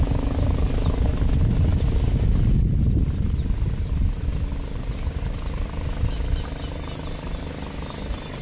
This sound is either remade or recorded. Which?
recorded